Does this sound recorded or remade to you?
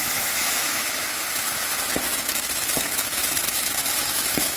remade